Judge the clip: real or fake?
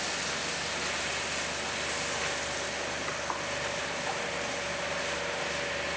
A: real